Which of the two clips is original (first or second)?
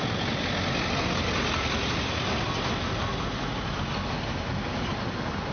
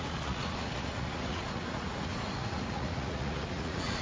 first